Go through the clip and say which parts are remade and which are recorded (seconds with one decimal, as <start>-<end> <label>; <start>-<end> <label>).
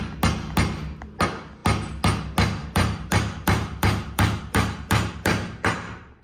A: 0.0-2.6 recorded; 2.6-6.2 remade